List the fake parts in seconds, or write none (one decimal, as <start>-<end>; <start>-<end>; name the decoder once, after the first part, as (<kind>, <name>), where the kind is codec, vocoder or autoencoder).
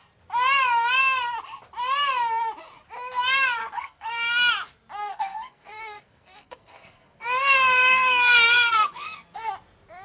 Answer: 3.6-4.1 (codec, SNAC); 5.0-9.5